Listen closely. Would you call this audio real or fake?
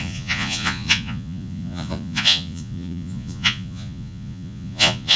fake